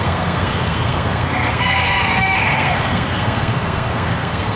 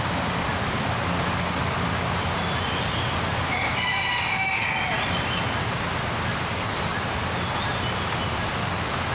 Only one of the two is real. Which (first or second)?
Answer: second